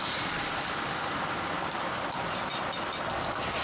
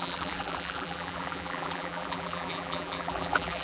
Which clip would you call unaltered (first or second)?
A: first